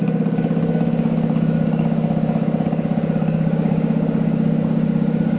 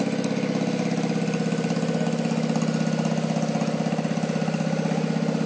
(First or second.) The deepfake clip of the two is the first